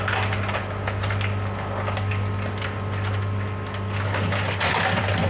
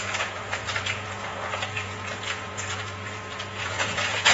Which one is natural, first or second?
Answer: first